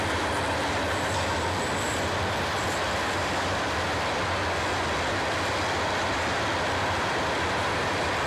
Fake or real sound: real